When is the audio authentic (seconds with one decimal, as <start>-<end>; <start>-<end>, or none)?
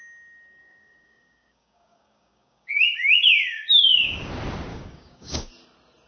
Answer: 0.0-0.6; 4.3-4.7; 5.5-6.1